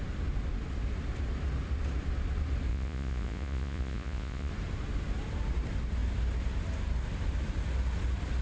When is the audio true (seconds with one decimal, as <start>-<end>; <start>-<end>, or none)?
0.0-2.7; 4.5-8.4